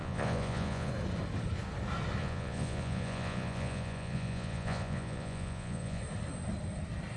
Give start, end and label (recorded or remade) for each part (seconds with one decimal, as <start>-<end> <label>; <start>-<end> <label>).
0.0-0.9 remade; 0.9-2.2 recorded; 2.2-6.0 remade; 6.0-7.2 recorded